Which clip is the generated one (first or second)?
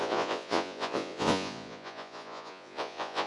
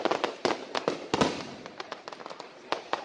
first